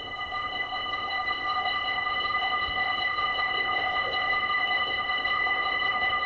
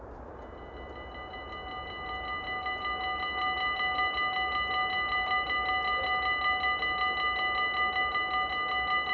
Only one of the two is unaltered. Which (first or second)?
second